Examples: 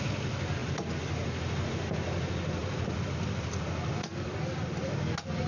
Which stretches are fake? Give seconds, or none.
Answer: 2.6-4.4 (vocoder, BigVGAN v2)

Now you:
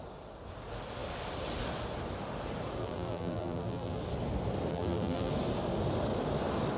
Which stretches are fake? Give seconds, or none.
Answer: 2.8-4.0 (vocoder, BigVGAN v2); 4.7-5.3

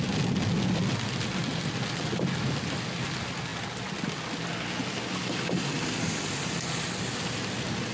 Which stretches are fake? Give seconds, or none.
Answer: none

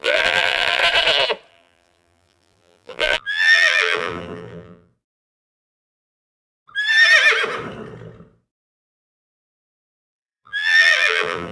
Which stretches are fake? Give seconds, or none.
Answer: 0.0-0.8 (vocoder, BigVGAN v2); 1.5-4.9; 9.3-11.5

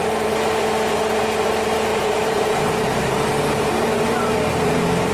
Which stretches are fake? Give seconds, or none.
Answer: 1.9-3.1 (vocoder, BigVGAN v2)

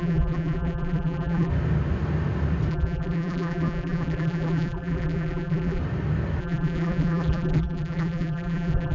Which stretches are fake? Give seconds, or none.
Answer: 0.0-1.5 (vocoder, BigVGAN v2); 2.7-5.8; 6.4-8.9